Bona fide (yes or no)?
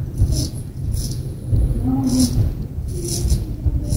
no